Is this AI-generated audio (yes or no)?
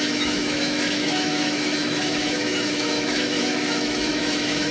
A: yes